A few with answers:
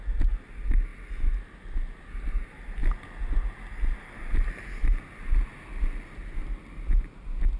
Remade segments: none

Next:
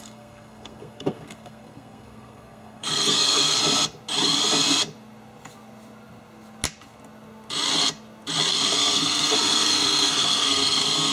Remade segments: 0.0-3.6 (codec, SNAC); 8.5-11.1